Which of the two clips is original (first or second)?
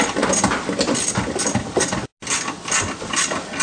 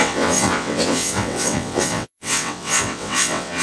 first